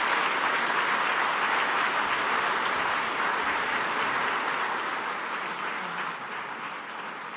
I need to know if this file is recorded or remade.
recorded